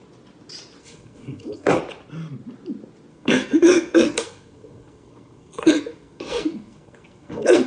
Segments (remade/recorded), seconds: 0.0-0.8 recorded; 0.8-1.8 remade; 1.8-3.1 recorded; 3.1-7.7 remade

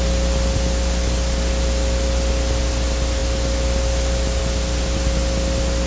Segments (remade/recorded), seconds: 0.0-5.9 recorded

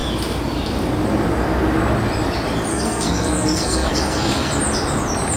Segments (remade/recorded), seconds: 0.0-2.7 recorded; 2.7-4.5 remade; 4.5-5.4 recorded